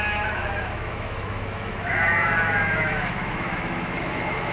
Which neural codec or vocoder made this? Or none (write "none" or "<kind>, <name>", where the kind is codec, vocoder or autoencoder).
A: autoencoder, DAC-VAE